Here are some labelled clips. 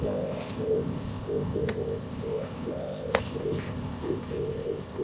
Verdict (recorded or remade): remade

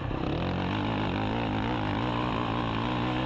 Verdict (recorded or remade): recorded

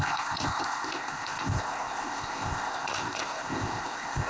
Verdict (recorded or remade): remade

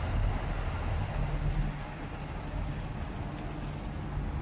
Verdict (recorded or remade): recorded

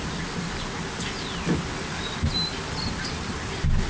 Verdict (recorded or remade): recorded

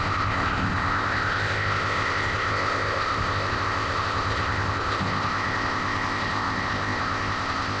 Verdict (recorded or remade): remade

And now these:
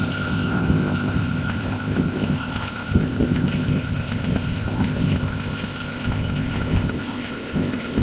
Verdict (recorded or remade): remade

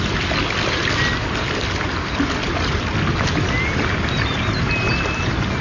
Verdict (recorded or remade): recorded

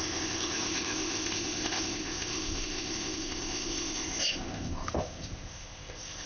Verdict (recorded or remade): remade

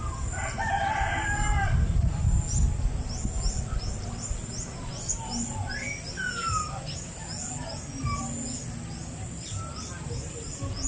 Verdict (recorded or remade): recorded